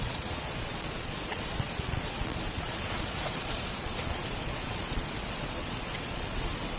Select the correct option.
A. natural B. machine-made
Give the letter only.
B